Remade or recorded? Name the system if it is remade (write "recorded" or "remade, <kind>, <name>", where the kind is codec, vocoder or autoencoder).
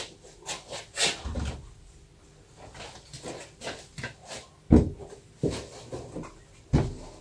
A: recorded